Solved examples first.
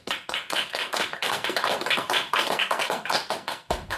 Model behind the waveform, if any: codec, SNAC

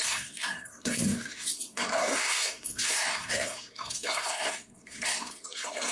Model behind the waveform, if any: codec, SNAC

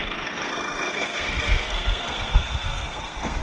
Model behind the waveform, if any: codec, SNAC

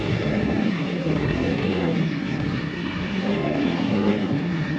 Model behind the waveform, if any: codec, SNAC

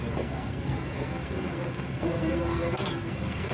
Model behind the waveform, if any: codec, SNAC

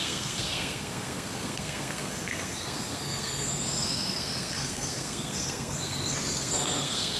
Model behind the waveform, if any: codec, SNAC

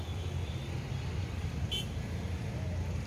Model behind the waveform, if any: none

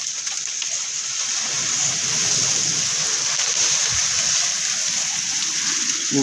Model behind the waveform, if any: none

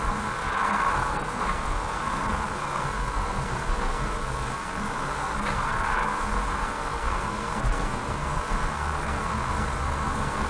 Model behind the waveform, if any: codec, SNAC